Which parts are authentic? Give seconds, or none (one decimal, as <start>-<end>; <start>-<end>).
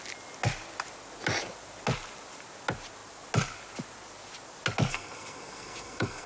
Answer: 0.0-4.9